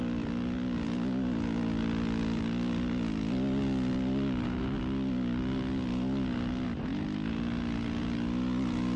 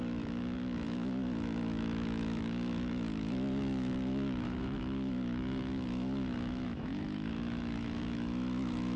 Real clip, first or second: first